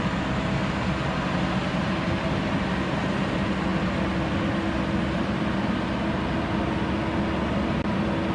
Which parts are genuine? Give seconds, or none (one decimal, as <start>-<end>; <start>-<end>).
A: 0.0-8.3